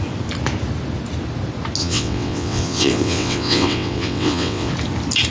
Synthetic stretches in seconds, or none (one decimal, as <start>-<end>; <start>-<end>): 1.8-4.7